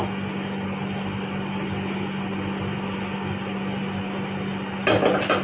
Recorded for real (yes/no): yes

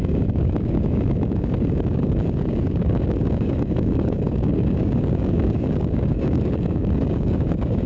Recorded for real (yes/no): no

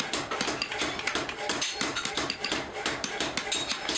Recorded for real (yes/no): yes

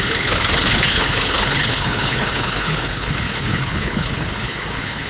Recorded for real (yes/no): no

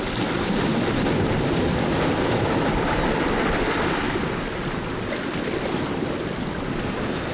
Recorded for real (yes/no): yes